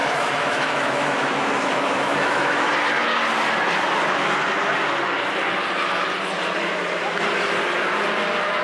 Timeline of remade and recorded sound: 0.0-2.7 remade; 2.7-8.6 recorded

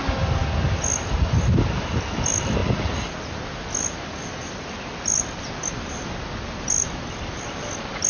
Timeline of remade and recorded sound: 0.0-8.1 recorded

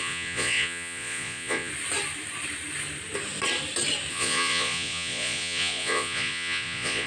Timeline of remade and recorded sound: 0.0-1.7 remade; 1.7-4.1 recorded; 4.1-7.1 remade